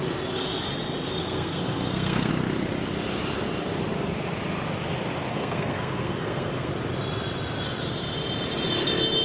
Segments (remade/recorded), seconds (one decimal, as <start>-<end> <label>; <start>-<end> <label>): 0.0-1.2 recorded; 1.2-2.3 remade; 2.3-5.3 recorded; 5.3-6.7 remade; 6.7-9.2 recorded